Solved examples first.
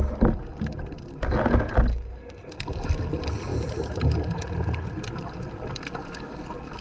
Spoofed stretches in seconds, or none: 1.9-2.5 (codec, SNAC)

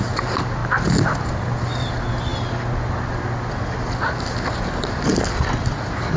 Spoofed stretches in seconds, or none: none

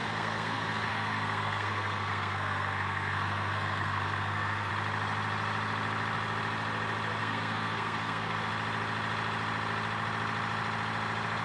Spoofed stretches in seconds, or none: 0.0-4.7 (codec, SNAC); 7.2-8.5

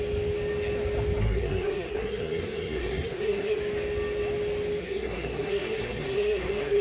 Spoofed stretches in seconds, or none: 1.2-3.6 (codec, SNAC); 4.8-6.8

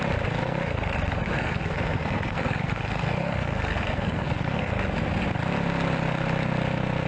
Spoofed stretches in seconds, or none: 0.4-4.7 (codec, SNAC)

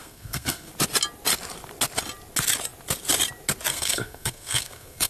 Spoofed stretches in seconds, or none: 0.0-0.7 (codec, SNAC); 3.7-5.1